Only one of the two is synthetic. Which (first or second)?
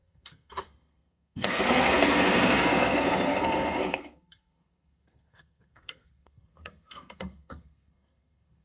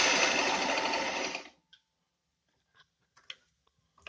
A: first